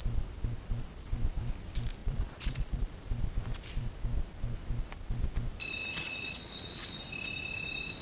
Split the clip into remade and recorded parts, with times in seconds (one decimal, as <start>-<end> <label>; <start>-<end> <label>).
0.0-2.0 recorded; 2.0-3.0 remade; 3.0-5.8 recorded; 5.8-7.0 remade; 7.0-8.0 recorded